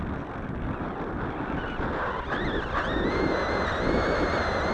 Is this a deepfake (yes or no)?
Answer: no